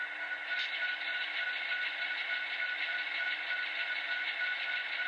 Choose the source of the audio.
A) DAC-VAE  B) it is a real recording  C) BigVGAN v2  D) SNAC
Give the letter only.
B